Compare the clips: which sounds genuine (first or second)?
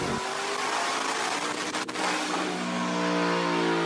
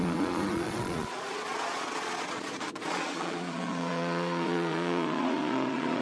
first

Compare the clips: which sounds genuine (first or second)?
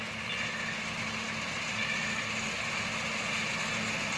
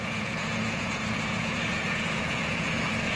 first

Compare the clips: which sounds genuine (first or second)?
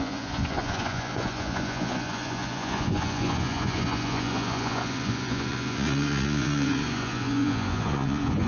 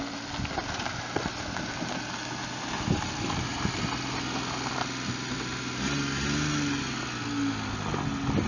second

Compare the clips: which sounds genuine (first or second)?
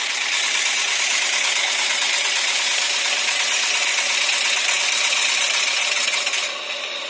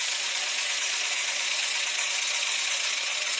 first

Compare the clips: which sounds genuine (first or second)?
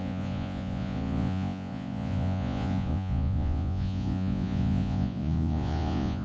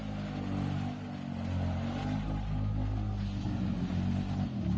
second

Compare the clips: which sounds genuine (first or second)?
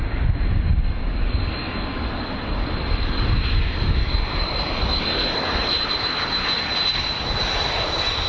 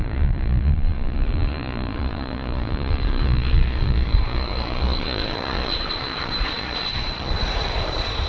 first